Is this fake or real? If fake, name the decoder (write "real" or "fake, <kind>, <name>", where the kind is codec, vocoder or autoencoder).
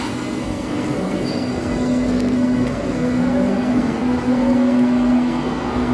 fake, codec, SNAC